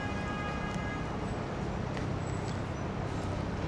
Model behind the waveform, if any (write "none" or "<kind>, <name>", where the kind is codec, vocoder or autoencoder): none